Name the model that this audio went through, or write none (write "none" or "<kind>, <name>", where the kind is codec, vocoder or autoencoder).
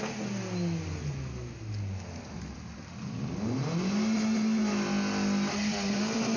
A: none